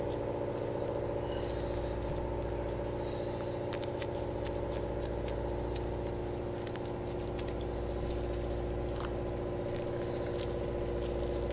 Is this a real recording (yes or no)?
yes